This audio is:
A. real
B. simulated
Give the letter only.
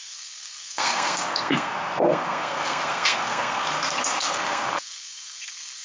B